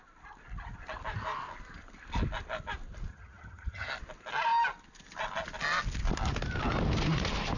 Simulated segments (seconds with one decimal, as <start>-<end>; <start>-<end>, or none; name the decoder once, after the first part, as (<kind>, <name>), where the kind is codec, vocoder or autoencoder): 3.1-3.9 (vocoder, HiFi-GAN)